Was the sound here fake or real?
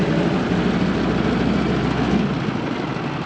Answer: real